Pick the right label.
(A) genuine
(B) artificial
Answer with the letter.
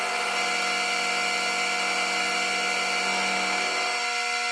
A